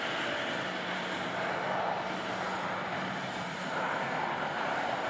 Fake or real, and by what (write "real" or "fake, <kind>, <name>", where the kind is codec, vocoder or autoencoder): real